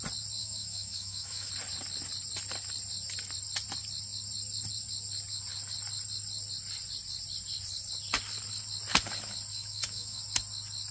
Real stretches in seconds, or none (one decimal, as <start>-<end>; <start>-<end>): 0.0-0.4; 1.5-9.5; 10.2-10.9